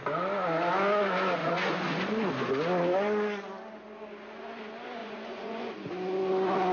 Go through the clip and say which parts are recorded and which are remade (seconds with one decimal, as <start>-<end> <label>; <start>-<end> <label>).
0.0-1.4 recorded; 1.4-2.0 remade; 2.0-5.0 recorded; 5.0-5.7 remade; 5.7-6.7 recorded